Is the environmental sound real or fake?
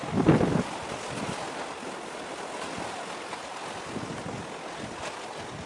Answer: real